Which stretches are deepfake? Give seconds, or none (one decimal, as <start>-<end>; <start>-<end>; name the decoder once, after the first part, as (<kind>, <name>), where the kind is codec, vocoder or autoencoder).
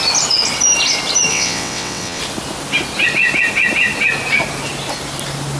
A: 1.3-2.2 (vocoder, WaveNeXt)